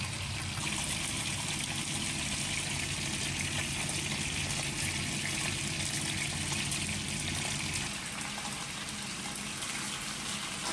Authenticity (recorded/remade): recorded